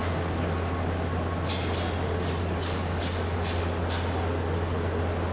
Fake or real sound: real